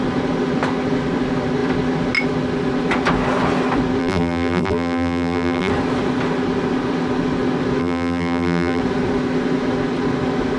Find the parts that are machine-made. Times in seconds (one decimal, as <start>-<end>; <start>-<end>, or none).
4.0-5.7; 7.8-8.8